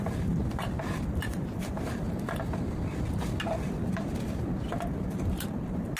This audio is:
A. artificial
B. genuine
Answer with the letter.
B